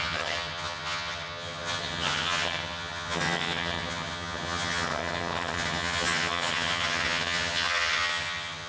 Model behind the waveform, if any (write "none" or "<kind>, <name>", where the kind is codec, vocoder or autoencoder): vocoder, HiFi-GAN